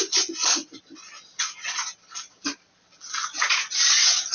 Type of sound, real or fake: real